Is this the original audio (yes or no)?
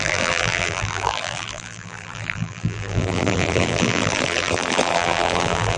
no